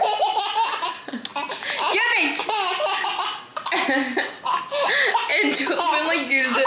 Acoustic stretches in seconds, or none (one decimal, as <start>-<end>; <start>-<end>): 0.0-6.7